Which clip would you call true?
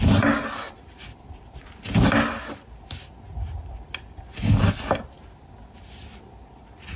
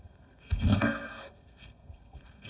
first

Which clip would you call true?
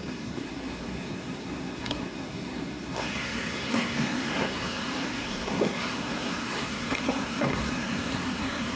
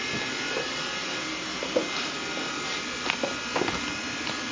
second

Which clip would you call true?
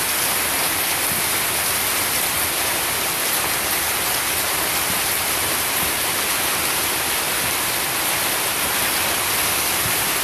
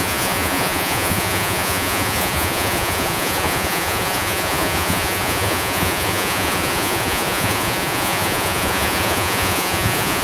first